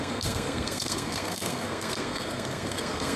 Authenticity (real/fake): fake